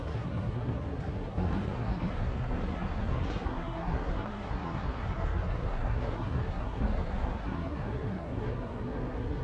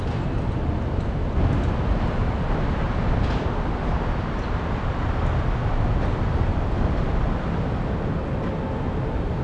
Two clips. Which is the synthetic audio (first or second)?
first